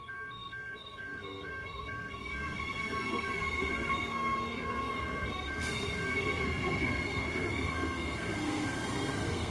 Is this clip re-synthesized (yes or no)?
yes